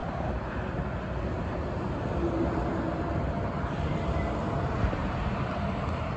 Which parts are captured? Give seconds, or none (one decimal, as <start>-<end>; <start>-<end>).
0.0-6.2